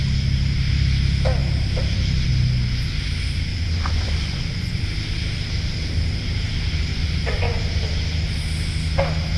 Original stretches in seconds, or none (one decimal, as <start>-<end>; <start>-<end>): 0.0-3.5; 4.8-6.9; 7.6-9.4